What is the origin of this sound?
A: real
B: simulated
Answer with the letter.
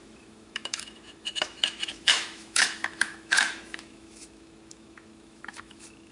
B